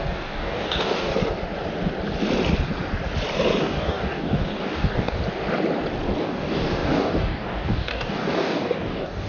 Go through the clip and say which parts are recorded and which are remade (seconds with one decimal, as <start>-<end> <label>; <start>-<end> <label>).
0.0-1.1 remade; 1.1-3.6 recorded; 3.6-5.2 remade; 5.2-6.2 recorded; 6.2-9.3 remade